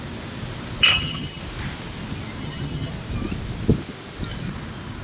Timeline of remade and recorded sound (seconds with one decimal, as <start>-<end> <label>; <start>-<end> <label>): 0.0-0.9 recorded; 0.9-1.4 remade; 1.4-2.4 recorded; 2.4-2.9 remade; 2.9-5.0 recorded